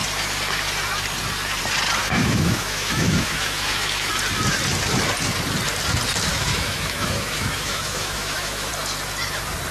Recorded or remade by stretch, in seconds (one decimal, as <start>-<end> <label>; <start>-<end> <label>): 0.0-2.0 recorded; 2.0-4.1 remade; 4.1-6.3 recorded; 6.3-8.7 remade; 8.7-9.7 recorded